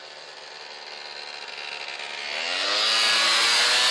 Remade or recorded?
recorded